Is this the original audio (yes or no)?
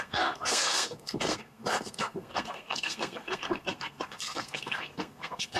no